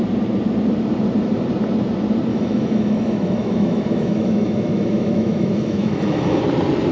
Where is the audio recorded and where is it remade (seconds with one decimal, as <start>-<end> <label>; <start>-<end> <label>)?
0.0-2.3 recorded; 2.3-6.4 remade; 6.4-6.9 recorded